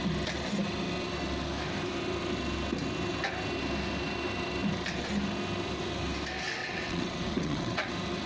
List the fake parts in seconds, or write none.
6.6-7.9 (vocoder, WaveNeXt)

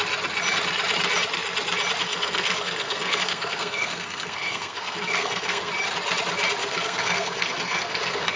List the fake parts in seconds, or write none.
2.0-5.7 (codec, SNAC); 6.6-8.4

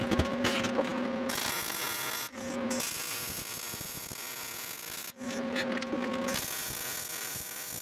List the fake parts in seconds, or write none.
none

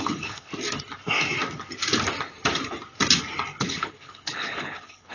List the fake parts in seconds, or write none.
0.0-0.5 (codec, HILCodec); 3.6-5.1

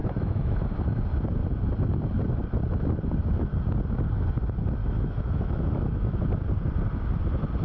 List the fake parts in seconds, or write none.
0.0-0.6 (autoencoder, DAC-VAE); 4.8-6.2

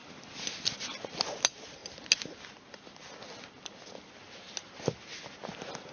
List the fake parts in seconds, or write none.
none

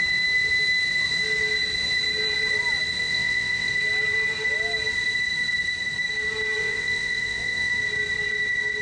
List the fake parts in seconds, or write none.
3.0-3.7 (vocoder, WaveNeXt); 6.6-7.7